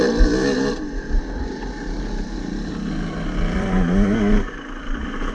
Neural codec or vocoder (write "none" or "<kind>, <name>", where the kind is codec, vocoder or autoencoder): none